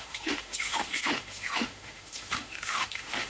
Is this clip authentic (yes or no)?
no